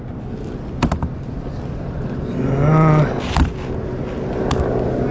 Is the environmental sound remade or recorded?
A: recorded